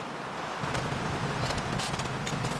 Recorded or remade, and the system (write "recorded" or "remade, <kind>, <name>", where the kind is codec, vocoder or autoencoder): recorded